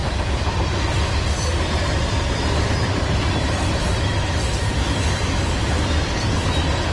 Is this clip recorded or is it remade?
remade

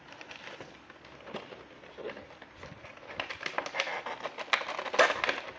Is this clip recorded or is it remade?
recorded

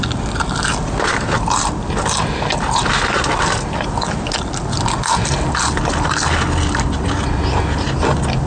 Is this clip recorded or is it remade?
recorded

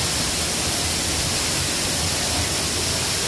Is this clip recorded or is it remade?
recorded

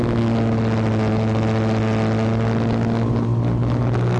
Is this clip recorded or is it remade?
recorded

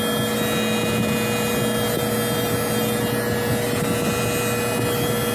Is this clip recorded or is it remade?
recorded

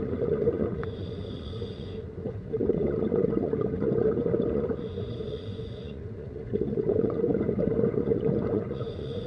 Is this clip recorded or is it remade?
remade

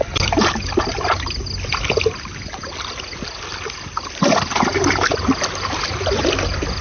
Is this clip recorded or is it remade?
recorded